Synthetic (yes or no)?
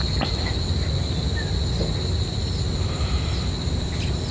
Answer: no